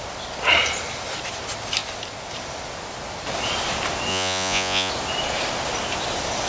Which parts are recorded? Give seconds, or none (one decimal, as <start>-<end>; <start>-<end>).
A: 0.0-4.1; 4.9-6.5